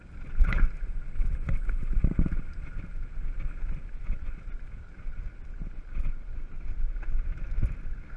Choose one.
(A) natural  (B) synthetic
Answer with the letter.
A